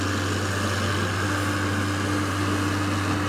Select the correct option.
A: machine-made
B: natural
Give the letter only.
B